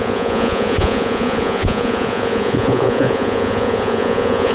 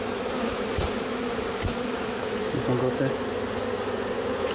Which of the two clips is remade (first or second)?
first